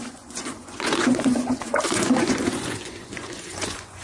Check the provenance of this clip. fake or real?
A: fake